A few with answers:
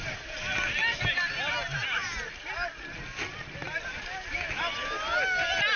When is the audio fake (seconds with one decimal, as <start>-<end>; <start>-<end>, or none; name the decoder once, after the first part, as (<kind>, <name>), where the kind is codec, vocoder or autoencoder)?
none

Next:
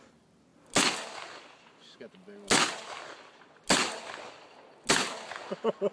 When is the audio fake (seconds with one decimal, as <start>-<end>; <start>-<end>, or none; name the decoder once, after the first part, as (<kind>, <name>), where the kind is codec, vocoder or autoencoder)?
none

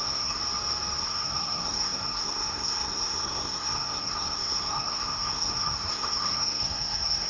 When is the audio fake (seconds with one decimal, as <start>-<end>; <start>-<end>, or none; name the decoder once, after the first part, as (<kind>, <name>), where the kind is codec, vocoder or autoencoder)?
0.0-0.4 (codec, SNAC); 1.0-7.3

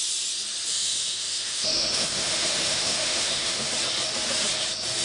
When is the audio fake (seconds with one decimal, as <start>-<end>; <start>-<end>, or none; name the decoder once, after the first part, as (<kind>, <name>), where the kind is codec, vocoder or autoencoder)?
0.7-3.7 (autoencoder, DAC-VAE)

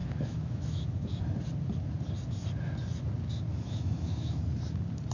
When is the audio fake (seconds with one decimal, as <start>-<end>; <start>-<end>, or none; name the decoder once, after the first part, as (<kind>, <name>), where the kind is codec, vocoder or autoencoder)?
0.0-1.2 (autoencoder, DAC-VAE); 3.5-4.4

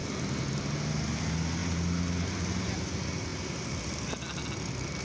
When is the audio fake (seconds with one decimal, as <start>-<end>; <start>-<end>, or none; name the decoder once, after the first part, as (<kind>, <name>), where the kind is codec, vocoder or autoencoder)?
none

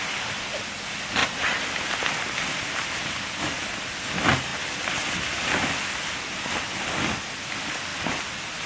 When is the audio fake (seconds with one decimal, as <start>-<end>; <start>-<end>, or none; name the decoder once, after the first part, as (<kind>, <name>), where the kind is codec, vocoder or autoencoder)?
0.0-4.5 (vocoder, BigVGAN v2); 7.5-7.9

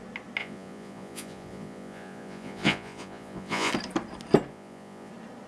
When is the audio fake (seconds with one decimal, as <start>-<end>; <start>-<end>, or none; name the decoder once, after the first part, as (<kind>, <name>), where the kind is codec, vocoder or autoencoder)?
0.4-3.7 (vocoder, Vocos); 4.5-5.1